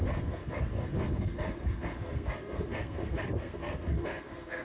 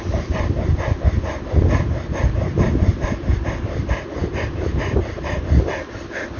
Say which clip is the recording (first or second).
second